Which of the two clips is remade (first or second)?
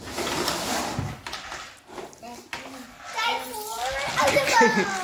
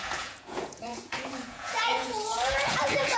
second